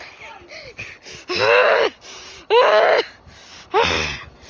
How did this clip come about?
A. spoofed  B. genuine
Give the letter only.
B